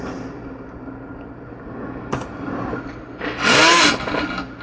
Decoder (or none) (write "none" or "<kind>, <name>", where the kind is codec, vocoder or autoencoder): none